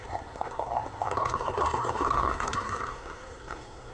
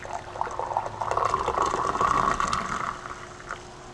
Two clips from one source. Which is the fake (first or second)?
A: first